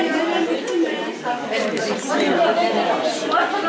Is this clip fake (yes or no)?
no